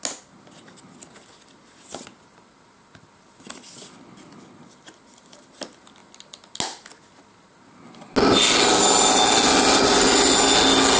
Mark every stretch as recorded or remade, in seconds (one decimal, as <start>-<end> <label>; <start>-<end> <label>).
0.0-11.0 recorded